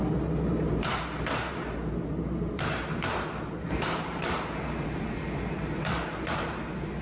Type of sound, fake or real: fake